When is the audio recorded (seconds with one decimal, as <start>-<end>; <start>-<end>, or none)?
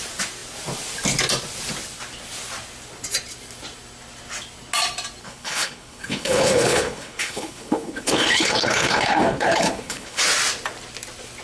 0.0-5.2; 10.2-11.4